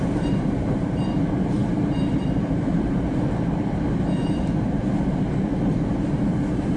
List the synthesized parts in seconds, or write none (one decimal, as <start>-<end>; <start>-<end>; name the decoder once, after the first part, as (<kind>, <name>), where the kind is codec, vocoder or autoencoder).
0.0-4.8 (vocoder, BigVGAN v2); 5.9-6.8